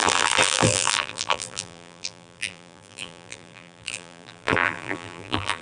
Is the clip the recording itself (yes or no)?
no